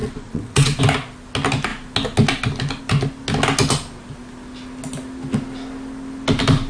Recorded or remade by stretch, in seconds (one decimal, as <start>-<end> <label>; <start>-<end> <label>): 0.0-0.8 remade; 0.8-6.7 recorded